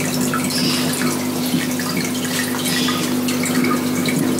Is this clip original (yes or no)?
yes